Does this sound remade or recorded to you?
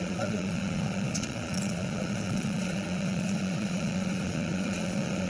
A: remade